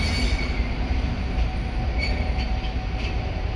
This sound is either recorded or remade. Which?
recorded